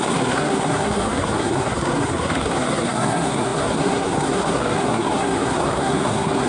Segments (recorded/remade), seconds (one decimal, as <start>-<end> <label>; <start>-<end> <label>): 0.0-6.5 remade

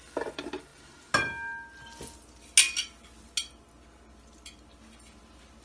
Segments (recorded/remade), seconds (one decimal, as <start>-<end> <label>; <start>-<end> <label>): 0.0-5.6 recorded

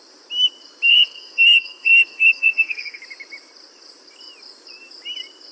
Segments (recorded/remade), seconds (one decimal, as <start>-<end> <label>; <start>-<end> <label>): 0.0-0.9 recorded; 0.9-3.0 remade; 3.0-5.5 recorded

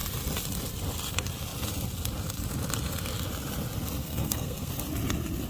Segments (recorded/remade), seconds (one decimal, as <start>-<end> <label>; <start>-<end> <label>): 0.0-4.0 recorded; 4.0-4.7 remade; 4.7-5.5 recorded

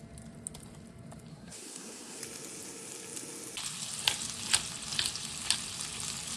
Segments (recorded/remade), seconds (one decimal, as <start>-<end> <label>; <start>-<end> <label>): 0.0-1.3 recorded; 1.3-2.2 remade; 2.2-6.4 recorded

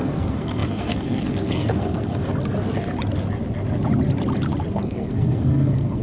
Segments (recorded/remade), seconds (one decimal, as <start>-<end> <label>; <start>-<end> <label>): 0.0-2.2 remade; 2.2-4.7 recorded; 4.7-6.0 remade

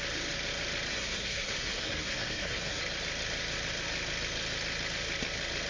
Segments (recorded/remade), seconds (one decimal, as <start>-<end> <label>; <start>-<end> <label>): 0.0-0.9 recorded; 0.9-2.8 remade; 2.8-5.7 recorded